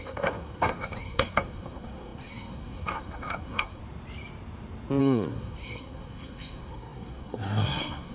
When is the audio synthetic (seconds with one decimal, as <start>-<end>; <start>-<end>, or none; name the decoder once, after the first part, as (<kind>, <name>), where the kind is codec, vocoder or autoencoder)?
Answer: 0.0-3.8 (codec, SNAC); 5.0-8.1